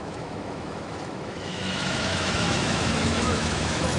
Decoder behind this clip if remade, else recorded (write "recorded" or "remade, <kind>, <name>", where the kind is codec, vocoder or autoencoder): remade, autoencoder, DAC-VAE